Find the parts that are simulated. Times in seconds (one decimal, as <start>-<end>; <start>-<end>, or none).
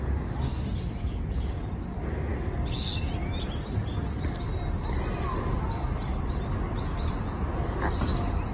none